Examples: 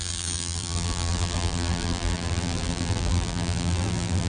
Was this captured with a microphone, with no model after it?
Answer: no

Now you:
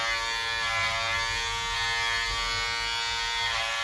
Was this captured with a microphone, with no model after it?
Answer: yes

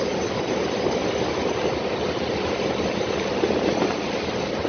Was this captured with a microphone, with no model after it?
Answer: yes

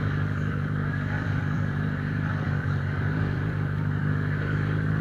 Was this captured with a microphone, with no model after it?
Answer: no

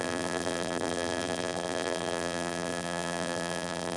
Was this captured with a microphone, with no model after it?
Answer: no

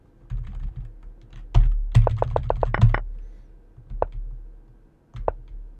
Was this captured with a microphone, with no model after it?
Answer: yes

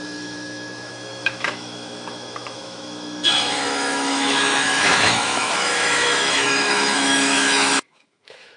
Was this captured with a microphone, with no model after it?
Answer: no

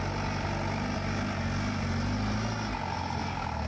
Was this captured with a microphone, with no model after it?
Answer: yes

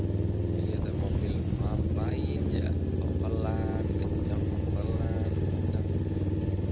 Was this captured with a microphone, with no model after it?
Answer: yes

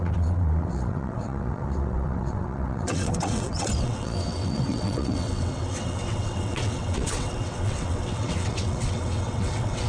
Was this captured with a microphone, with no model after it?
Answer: no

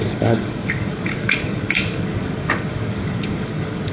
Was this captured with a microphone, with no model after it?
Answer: no